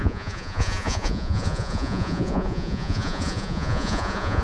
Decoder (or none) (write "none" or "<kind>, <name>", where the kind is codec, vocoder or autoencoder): vocoder, Vocos